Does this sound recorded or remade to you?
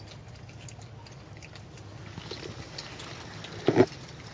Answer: recorded